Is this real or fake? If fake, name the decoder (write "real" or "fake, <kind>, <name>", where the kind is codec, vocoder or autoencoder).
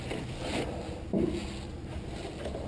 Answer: real